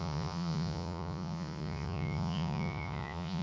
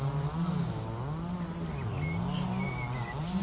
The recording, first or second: second